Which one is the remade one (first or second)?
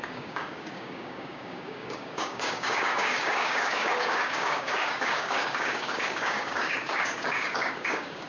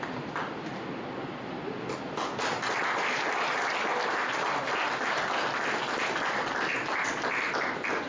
first